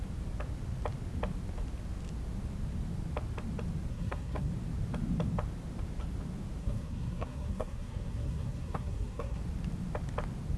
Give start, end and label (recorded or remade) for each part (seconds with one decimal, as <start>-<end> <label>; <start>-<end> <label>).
0.0-3.9 recorded; 3.9-4.5 remade; 4.5-6.6 recorded; 6.6-9.4 remade; 9.4-10.6 recorded